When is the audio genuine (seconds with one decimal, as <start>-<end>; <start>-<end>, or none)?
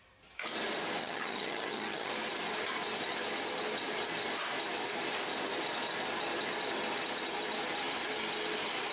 0.0-1.0; 2.1-8.9